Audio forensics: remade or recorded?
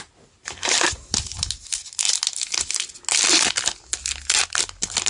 recorded